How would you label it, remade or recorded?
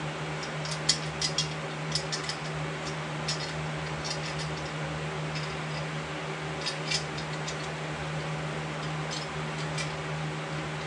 recorded